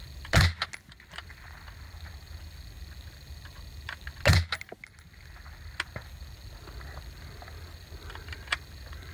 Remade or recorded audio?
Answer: recorded